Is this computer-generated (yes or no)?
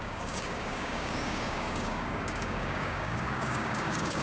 yes